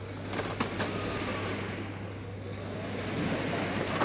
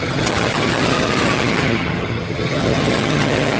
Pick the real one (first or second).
first